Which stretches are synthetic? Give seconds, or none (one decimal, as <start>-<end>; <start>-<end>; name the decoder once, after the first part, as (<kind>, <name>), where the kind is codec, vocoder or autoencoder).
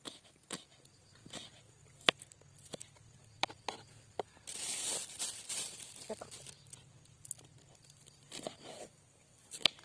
none